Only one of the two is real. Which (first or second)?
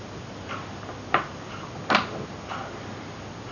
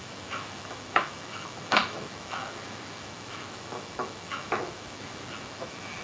first